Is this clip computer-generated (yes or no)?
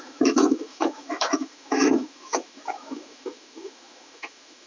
yes